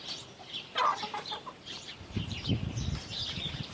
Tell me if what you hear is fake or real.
fake